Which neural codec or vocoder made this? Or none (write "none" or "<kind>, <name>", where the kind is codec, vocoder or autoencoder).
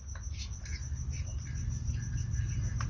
none